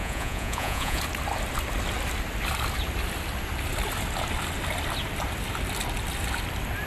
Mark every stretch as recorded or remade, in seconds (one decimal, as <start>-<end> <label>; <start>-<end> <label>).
0.0-1.0 remade; 1.0-6.9 recorded